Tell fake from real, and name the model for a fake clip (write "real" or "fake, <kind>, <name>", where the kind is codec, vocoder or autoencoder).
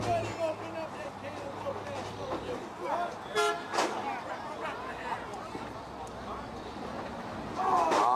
real